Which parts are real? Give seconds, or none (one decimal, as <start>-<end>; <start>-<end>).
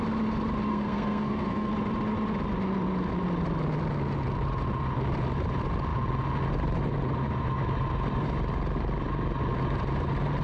0.0-0.7; 1.7-10.4